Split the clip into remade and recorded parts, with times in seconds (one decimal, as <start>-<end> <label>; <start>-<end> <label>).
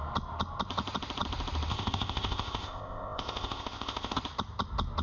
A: 0.0-1.7 recorded; 1.7-4.2 remade; 4.2-5.0 recorded